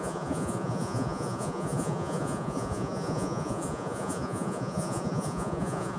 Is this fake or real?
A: fake